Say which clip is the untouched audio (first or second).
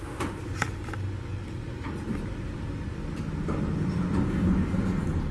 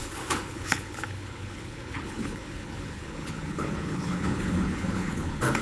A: first